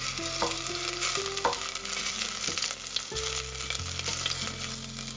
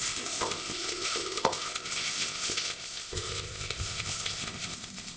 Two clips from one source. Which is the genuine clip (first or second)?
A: first